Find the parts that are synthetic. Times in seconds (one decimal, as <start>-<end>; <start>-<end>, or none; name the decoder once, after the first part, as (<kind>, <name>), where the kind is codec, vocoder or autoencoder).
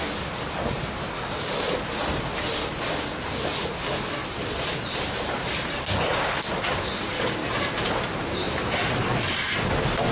4.2-4.7 (vocoder, BigVGAN v2); 6.1-10.1